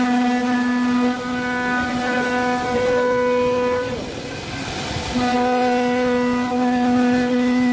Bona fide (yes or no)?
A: yes